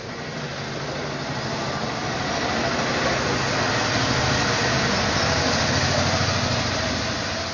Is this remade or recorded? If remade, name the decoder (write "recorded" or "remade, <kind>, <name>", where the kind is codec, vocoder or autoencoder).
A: recorded